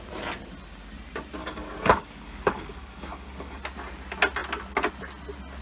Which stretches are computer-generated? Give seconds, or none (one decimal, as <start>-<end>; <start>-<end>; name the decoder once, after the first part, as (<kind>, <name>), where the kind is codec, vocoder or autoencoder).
1.4-3.6 (codec, DAC)